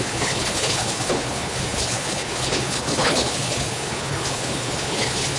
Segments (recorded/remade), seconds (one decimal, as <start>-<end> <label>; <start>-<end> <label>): 0.0-5.4 remade